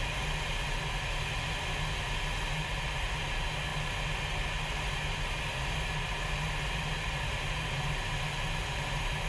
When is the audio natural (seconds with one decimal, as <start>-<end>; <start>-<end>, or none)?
0.0-9.3